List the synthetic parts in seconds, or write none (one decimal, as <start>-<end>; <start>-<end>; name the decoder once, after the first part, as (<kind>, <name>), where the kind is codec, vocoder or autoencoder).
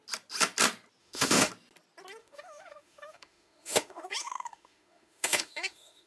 1.0-1.5 (autoencoder, DAC-VAE); 2.2-6.1